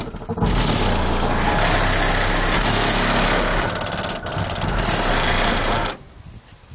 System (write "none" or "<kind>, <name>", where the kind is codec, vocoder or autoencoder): none